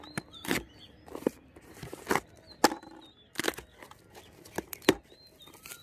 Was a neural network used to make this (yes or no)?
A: no